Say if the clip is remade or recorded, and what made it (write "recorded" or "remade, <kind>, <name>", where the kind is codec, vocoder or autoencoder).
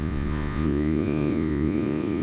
remade, vocoder, Vocos